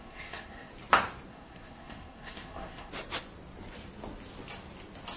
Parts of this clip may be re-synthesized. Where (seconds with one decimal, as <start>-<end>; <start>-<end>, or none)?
0.0-0.7; 1.3-2.9